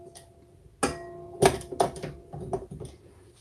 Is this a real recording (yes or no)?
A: yes